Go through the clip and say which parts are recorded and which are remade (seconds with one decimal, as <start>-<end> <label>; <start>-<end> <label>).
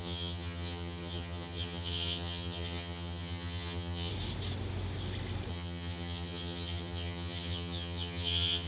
0.0-4.1 remade; 4.1-5.5 recorded; 5.5-8.7 remade